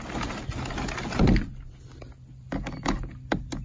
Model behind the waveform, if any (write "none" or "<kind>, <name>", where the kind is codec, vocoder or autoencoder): none